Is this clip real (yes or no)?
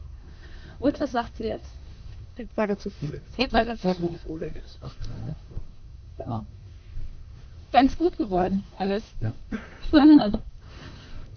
no